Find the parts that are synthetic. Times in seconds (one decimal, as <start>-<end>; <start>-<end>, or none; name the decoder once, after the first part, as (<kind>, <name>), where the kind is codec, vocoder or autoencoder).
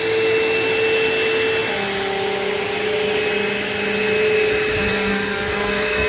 4.9-6.1 (codec, SNAC)